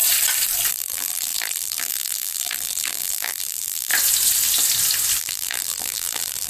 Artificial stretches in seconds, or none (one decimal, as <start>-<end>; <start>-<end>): 0.7-3.9; 5.2-6.5